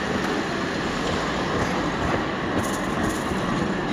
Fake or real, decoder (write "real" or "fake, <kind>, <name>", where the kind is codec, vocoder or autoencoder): real